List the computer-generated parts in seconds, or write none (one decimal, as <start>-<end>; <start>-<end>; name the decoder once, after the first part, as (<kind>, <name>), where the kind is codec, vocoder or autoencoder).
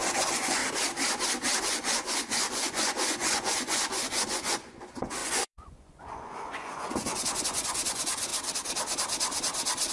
0.0-0.6 (vocoder, Vocos); 1.6-8.3